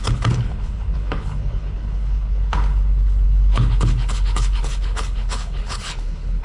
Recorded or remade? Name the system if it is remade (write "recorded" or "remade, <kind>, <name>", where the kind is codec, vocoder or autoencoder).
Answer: remade, codec, HILCodec